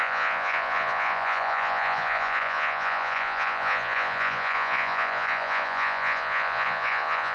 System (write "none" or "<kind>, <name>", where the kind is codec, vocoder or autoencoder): vocoder, Vocos